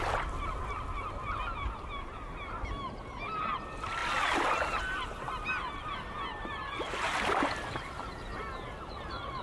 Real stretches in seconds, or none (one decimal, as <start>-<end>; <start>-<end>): 0.0-9.4

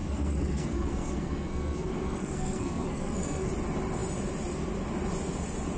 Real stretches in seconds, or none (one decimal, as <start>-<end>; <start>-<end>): 3.5-5.8

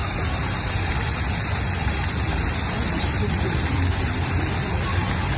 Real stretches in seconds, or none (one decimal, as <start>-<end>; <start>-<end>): 0.0-1.8; 4.0-5.4

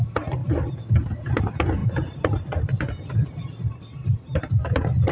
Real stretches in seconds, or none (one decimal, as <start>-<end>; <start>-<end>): 0.0-1.8; 2.4-5.1

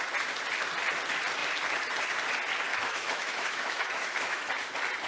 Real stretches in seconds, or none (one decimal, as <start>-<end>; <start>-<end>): 0.0-2.7; 4.5-5.1